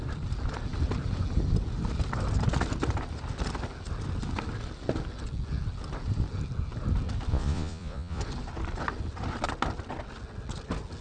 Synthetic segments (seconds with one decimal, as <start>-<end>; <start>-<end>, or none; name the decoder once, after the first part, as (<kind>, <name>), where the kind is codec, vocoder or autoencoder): 7.3-8.2 (vocoder, Vocos)